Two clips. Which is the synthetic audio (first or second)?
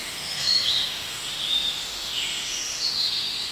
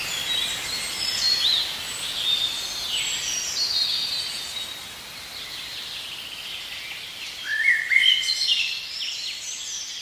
first